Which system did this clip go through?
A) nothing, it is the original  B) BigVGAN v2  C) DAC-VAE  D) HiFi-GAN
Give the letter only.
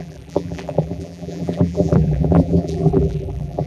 B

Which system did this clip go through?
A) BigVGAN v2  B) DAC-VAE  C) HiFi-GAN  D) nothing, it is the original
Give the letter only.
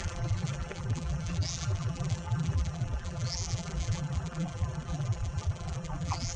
A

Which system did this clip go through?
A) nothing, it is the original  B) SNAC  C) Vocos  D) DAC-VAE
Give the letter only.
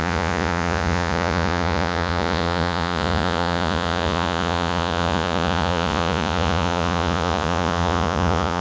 C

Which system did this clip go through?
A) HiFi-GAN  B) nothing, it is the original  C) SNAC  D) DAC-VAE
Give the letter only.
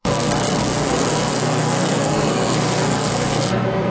C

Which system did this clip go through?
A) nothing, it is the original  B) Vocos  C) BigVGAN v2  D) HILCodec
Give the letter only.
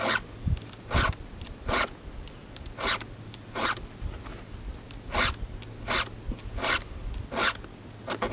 A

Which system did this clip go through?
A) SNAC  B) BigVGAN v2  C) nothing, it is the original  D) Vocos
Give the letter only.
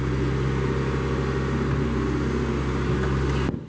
C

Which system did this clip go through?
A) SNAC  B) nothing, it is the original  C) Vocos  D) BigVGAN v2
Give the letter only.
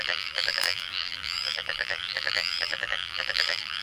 D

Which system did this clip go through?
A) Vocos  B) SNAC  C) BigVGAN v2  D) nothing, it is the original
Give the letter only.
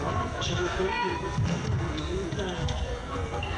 B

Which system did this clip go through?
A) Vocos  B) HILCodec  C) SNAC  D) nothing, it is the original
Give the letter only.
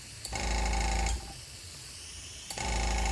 D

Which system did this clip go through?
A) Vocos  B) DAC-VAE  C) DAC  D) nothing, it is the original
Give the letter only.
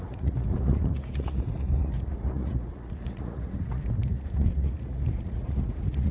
A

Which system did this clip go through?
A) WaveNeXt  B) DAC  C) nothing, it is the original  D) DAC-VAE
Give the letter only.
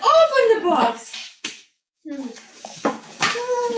B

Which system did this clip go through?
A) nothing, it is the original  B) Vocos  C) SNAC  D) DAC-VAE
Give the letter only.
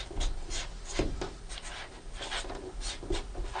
A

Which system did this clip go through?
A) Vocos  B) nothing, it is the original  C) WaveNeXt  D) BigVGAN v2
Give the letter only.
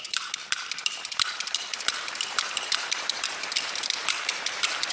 D